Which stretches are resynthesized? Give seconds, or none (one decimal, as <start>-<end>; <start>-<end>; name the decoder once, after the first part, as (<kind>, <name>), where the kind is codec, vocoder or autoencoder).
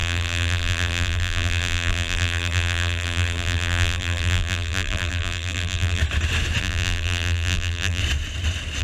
0.0-6.0 (vocoder, BigVGAN v2); 6.6-8.0